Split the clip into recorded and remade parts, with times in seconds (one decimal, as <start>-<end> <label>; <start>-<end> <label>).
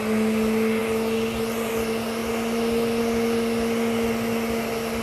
0.0-5.0 recorded